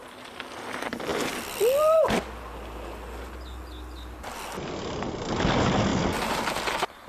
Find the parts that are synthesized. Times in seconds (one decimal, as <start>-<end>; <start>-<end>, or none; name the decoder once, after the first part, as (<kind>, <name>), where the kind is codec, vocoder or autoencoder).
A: none